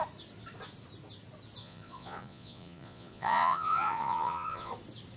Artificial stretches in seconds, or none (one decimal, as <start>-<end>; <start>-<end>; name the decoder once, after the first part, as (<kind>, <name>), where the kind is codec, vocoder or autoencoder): 1.6-4.7 (vocoder, Vocos)